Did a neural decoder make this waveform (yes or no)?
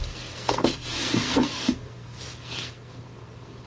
yes